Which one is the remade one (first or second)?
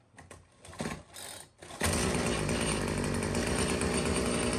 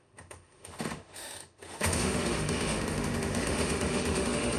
second